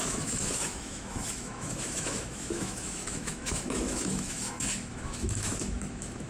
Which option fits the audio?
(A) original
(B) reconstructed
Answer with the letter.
B